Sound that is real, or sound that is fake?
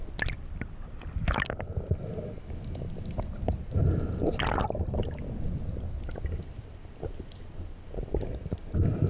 real